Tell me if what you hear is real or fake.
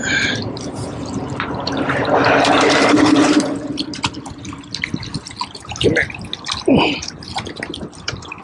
real